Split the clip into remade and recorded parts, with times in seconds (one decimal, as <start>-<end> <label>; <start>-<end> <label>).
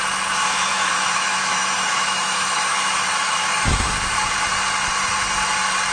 0.0-0.4 recorded; 0.4-3.9 remade; 3.9-5.9 recorded